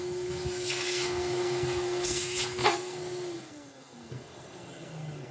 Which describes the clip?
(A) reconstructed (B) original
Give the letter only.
A